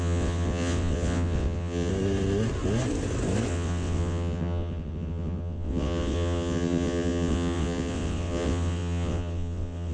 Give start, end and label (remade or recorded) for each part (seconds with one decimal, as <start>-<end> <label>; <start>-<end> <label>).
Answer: 0.0-1.9 remade; 1.9-3.5 recorded; 3.5-9.9 remade